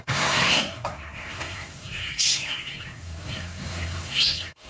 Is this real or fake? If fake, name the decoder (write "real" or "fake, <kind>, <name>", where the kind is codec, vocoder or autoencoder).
fake, codec, SNAC